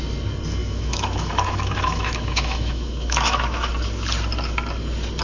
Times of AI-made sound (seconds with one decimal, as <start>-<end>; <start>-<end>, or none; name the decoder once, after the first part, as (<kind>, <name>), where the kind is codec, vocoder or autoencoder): 0.6-3.7 (autoencoder, DAC-VAE)